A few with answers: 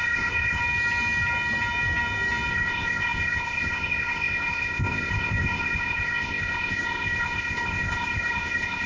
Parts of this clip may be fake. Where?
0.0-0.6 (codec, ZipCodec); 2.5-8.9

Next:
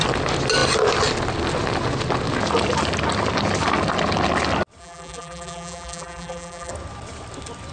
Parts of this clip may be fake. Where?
4.8-6.7 (vocoder, BigVGAN v2)

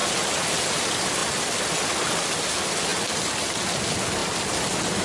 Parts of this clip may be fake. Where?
none

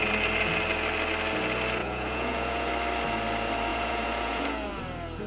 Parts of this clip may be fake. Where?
1.8-2.7 (vocoder, Vocos); 3.7-4.8

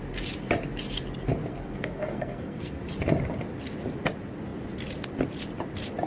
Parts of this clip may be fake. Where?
1.5-2.8 (codec, SNAC)

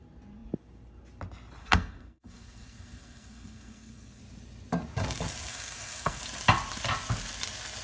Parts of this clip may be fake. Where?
1.6-4.2 (codec, SNAC); 5.5-6.2

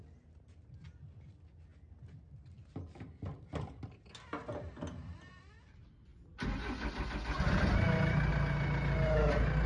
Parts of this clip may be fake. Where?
none